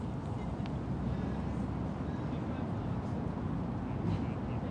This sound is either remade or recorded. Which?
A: recorded